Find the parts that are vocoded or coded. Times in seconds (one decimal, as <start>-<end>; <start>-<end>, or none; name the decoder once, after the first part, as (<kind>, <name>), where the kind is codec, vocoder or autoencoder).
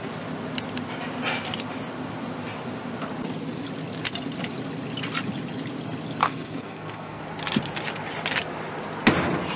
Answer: 6.2-7.2 (codec, SNAC)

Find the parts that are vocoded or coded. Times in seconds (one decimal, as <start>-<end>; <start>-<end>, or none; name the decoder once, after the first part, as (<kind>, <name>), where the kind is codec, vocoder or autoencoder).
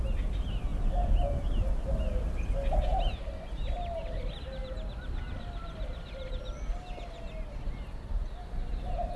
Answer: none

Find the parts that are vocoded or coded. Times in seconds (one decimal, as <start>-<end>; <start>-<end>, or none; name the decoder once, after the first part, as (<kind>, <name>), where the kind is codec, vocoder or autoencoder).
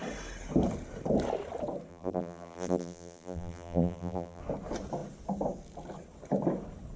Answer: 1.9-4.4 (vocoder, BigVGAN v2)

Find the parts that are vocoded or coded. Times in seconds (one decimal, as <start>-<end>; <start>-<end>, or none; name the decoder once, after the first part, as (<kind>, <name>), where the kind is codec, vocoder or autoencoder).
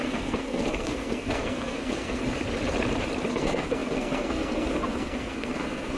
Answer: 0.0-2.2 (codec, SNAC); 3.3-6.0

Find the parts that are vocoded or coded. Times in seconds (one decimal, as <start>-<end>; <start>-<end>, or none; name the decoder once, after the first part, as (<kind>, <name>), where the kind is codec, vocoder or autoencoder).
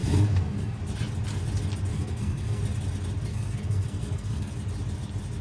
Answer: 0.0-0.8 (codec, SNAC); 1.9-2.6; 3.3-4.5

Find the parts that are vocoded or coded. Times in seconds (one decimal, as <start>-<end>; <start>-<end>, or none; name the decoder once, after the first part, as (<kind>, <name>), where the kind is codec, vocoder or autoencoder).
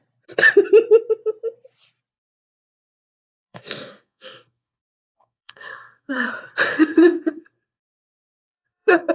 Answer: 2.1-6.3 (codec, SNAC); 6.7-9.1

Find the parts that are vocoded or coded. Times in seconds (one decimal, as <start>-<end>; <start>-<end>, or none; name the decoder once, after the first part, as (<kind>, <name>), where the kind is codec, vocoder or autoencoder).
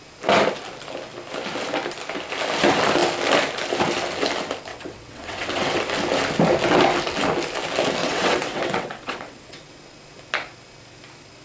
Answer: 4.7-5.8 (vocoder, WaveNeXt); 8.0-9.7